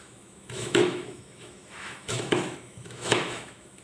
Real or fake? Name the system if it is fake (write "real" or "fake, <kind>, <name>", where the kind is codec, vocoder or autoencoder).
fake, autoencoder, DAC-VAE